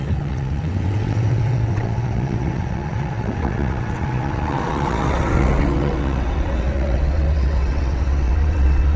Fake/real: fake